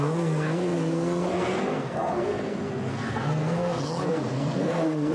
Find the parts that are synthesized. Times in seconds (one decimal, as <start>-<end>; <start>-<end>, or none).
0.0-5.1